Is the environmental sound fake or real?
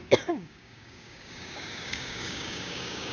fake